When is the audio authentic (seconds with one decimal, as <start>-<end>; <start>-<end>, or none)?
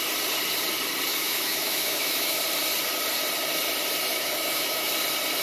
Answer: 0.0-1.1; 2.4-4.1; 4.9-5.4